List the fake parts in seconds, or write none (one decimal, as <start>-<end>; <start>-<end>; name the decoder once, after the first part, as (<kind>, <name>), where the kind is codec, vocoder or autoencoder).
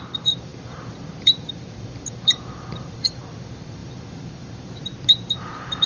0.0-4.9 (vocoder, BigVGAN v2); 5.4-5.9